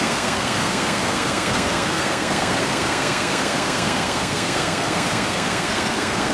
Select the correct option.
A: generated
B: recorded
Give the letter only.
A